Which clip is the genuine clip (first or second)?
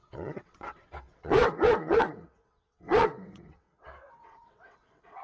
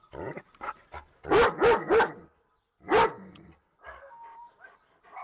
second